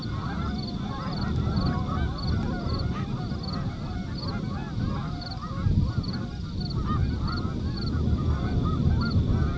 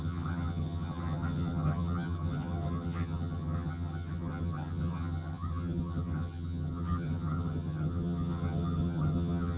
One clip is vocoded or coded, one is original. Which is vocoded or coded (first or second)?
second